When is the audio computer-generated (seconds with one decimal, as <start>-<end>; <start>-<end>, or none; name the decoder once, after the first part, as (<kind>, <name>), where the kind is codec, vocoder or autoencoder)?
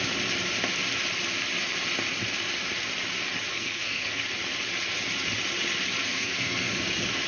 3.5-4.2 (codec, SNAC); 6.1-6.7